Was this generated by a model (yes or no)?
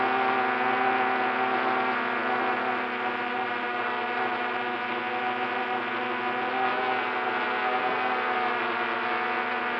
no